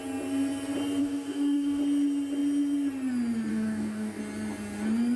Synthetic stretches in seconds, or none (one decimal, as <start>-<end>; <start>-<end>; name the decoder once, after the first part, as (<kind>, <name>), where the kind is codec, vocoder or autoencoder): 1.0-1.8 (codec, DAC); 3.5-4.2